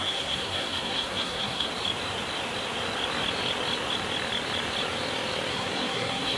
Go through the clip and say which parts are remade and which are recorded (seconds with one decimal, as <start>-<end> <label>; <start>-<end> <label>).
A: 0.0-1.7 remade; 1.7-5.5 recorded; 5.5-6.4 remade